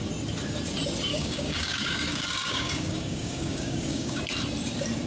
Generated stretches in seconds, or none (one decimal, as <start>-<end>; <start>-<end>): 1.1-4.2